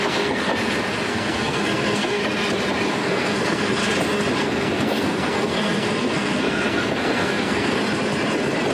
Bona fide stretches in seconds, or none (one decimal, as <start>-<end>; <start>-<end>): 0.5-1.1; 2.2-2.9; 3.8-4.4; 7.8-8.7

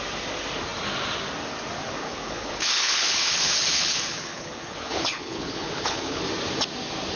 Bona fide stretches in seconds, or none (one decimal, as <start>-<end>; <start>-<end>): 0.0-2.0; 6.2-7.2

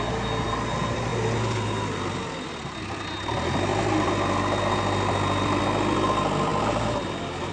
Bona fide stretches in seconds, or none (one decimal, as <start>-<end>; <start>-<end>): 0.0-7.5

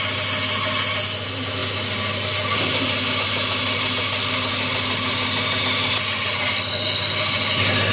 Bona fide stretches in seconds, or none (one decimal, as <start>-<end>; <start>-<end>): 0.0-7.9

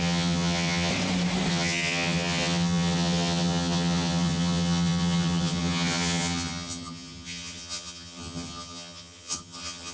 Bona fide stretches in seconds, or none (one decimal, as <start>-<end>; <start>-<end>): 0.9-1.5

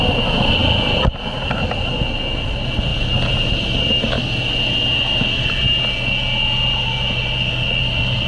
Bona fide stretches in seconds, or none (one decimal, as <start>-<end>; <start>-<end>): 0.0-8.3

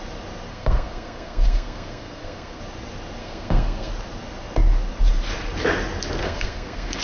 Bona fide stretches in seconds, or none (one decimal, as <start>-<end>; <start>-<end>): 0.0-0.5; 2.6-3.2; 3.9-6.2

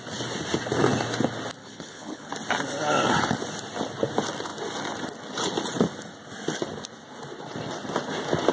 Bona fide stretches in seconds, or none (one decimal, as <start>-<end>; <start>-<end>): 0.0-1.6; 2.3-8.5